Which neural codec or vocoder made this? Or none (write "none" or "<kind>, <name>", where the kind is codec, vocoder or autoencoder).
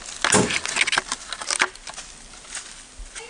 none